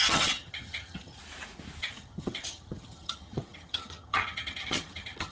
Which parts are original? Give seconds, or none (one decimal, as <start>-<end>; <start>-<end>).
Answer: 1.2-1.8